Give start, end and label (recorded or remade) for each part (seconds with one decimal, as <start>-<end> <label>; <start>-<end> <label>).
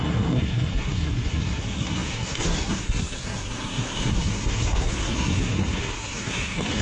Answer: 0.0-6.8 remade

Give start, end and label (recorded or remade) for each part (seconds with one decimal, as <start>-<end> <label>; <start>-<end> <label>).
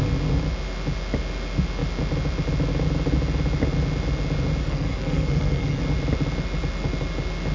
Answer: 0.0-4.6 recorded; 4.6-5.8 remade; 5.8-7.5 recorded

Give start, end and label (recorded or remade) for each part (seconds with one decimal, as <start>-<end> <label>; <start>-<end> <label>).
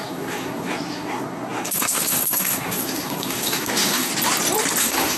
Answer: 0.0-4.1 remade; 4.1-4.8 recorded; 4.8-5.2 remade